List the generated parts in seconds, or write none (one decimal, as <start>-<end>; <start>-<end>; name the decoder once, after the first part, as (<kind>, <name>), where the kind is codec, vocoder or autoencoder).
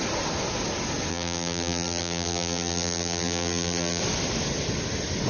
1.1-4.0 (vocoder, BigVGAN v2)